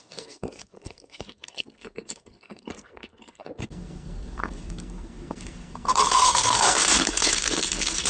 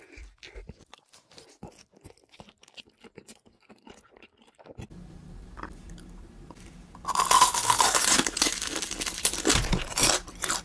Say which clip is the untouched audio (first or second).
second